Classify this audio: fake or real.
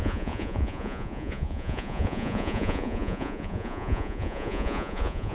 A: fake